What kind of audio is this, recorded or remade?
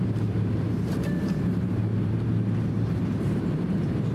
remade